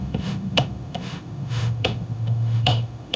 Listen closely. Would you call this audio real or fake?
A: fake